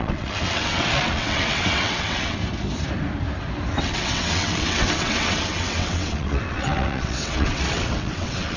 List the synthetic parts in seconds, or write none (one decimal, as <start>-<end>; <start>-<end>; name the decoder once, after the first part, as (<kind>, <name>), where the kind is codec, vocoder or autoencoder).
0.0-2.4 (vocoder, WaveNeXt); 3.8-8.6